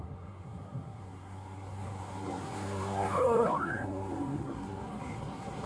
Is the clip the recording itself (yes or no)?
no